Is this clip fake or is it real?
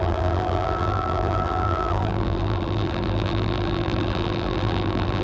fake